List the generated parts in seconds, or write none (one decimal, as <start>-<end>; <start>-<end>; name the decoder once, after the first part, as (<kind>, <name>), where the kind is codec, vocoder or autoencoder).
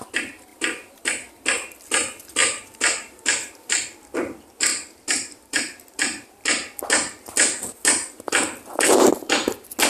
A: 0.5-1.3 (vocoder, BigVGAN v2); 2.4-3.3; 4.7-6.8